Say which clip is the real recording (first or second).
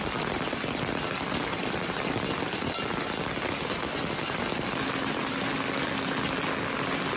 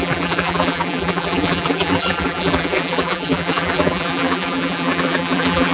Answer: first